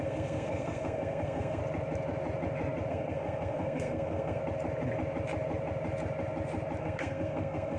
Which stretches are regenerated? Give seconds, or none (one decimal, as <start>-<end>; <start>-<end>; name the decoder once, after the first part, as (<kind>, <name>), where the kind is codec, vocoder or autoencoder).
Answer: 0.0-1.6 (codec, SNAC); 2.9-4.4; 6.8-7.8